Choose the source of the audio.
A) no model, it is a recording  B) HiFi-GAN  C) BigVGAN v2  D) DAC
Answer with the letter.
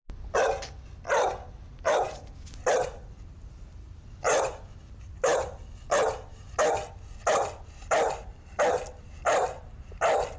A